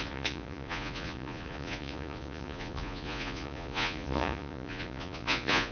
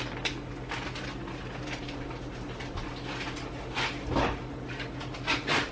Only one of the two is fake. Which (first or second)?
first